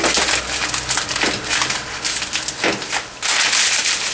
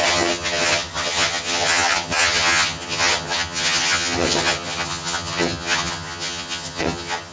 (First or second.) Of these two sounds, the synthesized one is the second